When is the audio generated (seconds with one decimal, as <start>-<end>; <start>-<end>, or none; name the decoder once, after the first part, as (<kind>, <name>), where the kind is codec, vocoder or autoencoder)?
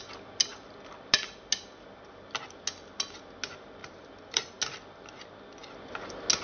3.8-4.6 (vocoder, BigVGAN v2)